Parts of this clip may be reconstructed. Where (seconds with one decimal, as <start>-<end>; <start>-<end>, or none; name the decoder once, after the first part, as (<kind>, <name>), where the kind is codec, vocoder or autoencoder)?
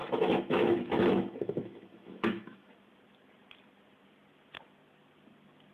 0.0-2.7 (autoencoder, DAC-VAE)